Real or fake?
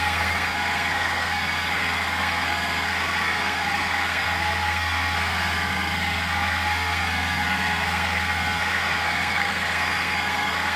fake